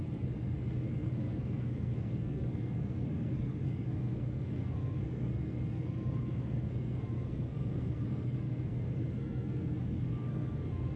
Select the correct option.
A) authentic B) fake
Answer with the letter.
B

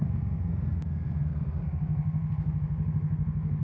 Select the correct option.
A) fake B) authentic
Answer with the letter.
A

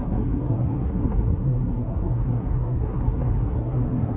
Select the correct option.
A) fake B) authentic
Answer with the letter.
A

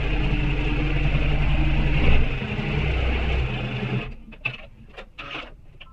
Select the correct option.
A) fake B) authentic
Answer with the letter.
B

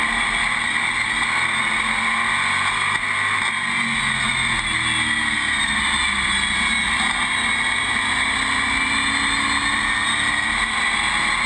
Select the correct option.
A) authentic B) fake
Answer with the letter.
A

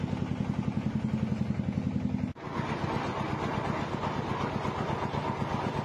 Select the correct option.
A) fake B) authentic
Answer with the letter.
B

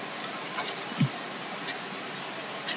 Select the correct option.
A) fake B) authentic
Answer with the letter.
B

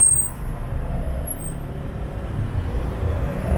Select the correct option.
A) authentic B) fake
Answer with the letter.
A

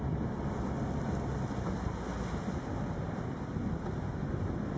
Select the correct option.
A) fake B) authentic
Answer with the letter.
B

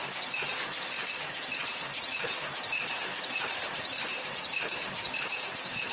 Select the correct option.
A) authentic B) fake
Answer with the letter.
A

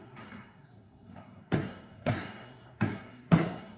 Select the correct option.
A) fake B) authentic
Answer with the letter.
A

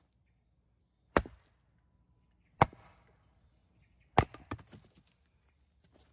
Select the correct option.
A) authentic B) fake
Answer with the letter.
A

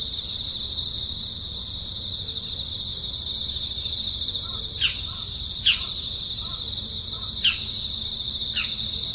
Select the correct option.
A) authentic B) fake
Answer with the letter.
A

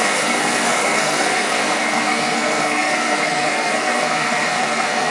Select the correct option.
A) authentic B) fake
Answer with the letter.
B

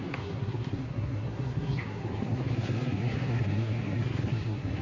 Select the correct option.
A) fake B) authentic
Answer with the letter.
A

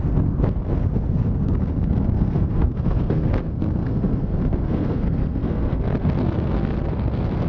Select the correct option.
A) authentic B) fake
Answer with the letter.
B